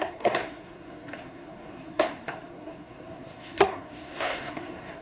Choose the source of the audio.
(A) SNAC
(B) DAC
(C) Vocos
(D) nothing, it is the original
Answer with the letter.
A